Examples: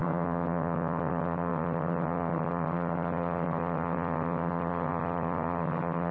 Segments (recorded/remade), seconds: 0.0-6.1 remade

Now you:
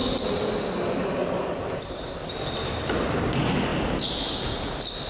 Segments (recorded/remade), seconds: 0.0-5.1 recorded

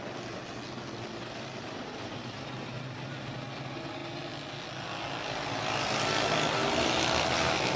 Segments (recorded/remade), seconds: 0.0-1.1 recorded; 1.1-2.5 remade; 2.5-7.8 recorded